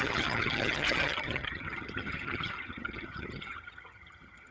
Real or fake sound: fake